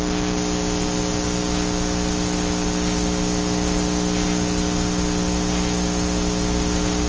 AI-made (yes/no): no